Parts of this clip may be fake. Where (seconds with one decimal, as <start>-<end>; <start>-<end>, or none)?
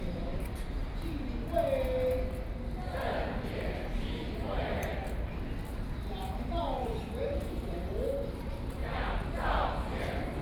0.0-0.8; 3.5-4.9; 6.5-8.8; 9.7-10.4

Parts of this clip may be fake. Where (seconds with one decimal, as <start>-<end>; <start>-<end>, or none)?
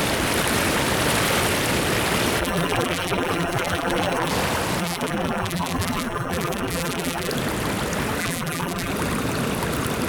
2.4-4.3; 4.8-7.3; 8.2-8.9